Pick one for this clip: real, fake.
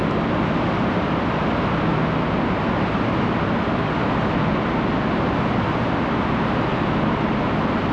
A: real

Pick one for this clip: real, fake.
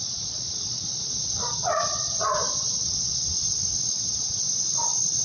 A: fake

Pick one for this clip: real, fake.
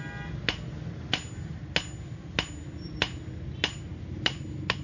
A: real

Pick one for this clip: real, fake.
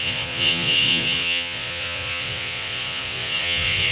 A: fake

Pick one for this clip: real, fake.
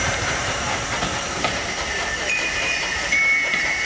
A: fake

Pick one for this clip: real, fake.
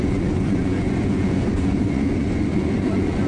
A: fake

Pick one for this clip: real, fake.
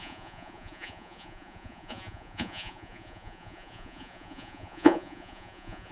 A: fake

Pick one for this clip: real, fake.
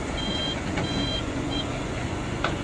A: fake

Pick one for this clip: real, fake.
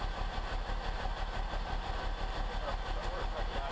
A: real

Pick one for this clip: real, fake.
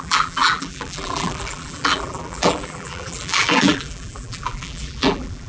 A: fake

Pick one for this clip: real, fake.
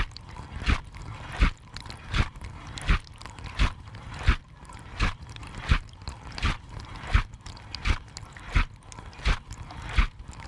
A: real